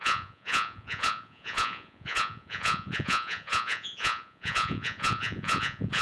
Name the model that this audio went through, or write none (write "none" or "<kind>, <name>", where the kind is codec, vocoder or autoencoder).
vocoder, Vocos